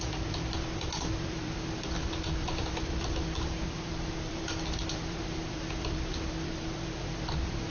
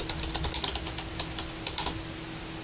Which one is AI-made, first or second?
first